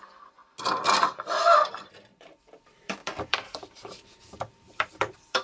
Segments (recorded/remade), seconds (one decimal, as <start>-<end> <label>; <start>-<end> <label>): 0.0-0.4 remade; 0.4-1.0 recorded; 1.0-5.4 remade

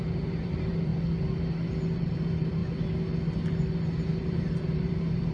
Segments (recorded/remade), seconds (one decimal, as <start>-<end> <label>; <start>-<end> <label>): 0.0-0.9 remade; 0.9-2.0 recorded; 2.0-2.6 remade; 2.6-4.0 recorded; 4.0-5.3 remade

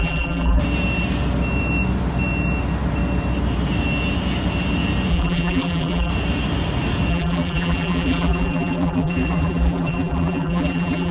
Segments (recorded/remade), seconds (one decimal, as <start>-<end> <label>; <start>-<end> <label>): 0.0-0.6 remade; 0.6-5.1 recorded; 5.1-6.1 remade; 6.1-7.1 recorded; 7.1-11.1 remade

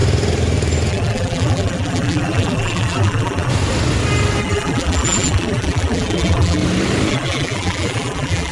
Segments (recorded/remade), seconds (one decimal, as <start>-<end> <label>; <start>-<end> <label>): 0.0-0.9 recorded; 0.9-3.5 remade; 3.5-4.4 recorded; 4.4-6.6 remade; 6.6-7.1 recorded; 7.1-8.5 remade

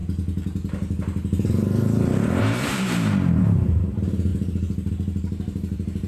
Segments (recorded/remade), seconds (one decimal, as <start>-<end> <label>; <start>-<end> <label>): 0.0-2.4 recorded; 2.4-6.1 remade